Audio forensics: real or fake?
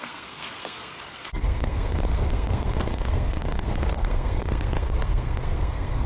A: fake